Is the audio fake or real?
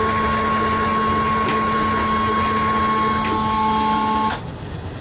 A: real